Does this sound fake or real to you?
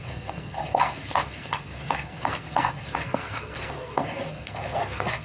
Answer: fake